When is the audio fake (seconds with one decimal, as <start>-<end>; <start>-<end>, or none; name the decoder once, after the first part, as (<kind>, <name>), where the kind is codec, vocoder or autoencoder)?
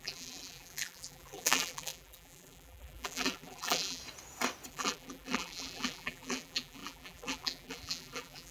0.0-4.0 (vocoder, BigVGAN v2); 4.7-8.5